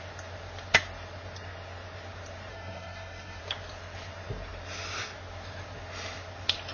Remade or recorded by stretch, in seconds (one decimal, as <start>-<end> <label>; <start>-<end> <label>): 0.0-2.5 recorded; 2.5-3.4 remade; 3.4-6.7 recorded